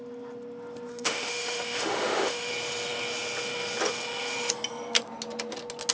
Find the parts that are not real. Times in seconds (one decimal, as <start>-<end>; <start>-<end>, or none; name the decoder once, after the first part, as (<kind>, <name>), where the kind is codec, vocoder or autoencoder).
0.9-2.5 (autoencoder, DAC-VAE)

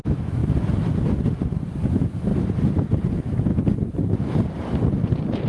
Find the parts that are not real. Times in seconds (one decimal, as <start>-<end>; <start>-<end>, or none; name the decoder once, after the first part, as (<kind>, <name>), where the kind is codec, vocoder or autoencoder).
0.0-0.4 (autoencoder, DAC-VAE); 1.9-2.3; 3.1-3.5

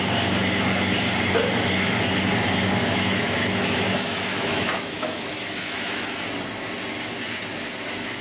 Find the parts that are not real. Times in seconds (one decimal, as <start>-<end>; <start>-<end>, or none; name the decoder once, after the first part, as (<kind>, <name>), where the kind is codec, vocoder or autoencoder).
2.8-6.2 (autoencoder, DAC-VAE)

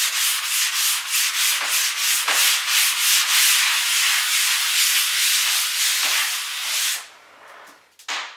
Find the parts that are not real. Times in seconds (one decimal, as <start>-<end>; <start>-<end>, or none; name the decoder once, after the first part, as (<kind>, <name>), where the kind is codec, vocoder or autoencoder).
none